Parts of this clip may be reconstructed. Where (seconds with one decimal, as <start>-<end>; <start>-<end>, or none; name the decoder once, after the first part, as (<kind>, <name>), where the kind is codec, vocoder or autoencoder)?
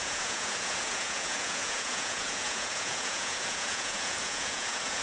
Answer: 0.0-5.0 (vocoder, Vocos)